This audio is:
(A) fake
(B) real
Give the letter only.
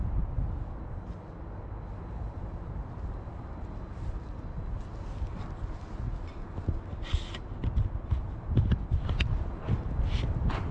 B